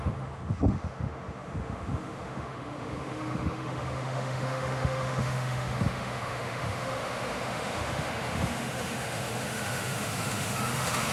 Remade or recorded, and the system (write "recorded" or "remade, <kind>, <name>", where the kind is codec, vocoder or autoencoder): remade, autoencoder, DAC-VAE